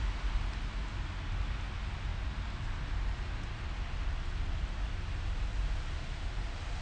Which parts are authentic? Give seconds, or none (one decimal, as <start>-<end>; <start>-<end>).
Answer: 0.0-6.8